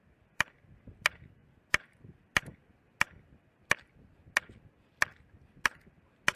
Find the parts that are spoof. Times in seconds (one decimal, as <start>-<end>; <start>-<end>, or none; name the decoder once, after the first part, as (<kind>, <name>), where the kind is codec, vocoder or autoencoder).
none